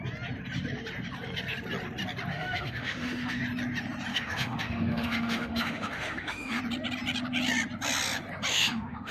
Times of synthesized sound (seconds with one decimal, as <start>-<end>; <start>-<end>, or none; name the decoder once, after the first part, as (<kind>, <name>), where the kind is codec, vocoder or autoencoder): 2.3-3.4 (autoencoder, DAC-VAE); 4.1-6.6; 8.5-9.1